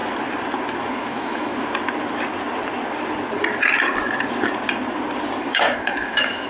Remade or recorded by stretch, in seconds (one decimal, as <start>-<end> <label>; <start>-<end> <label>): 0.0-0.8 recorded; 0.8-1.5 remade; 1.5-5.4 recorded; 5.4-6.5 remade